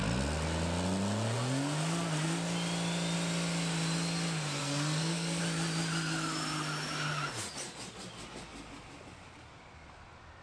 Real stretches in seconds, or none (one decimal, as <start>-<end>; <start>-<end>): 0.0-4.6; 5.4-10.4